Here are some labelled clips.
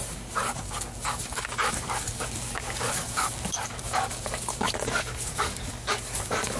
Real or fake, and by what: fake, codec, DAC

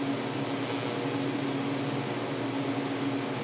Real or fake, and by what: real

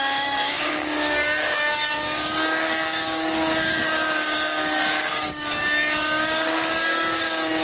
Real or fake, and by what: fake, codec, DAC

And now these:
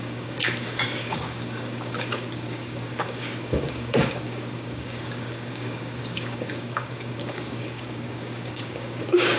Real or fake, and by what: fake, codec, DAC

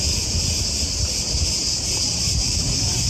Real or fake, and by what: real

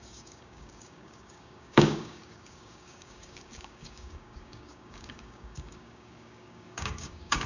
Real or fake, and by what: fake, codec, DAC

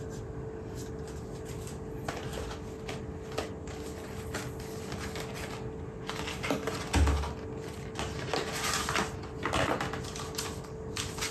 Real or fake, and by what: real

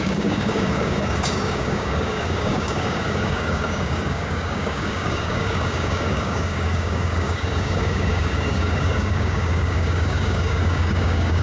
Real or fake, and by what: fake, codec, DAC